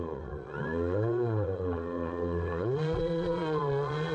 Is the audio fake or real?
fake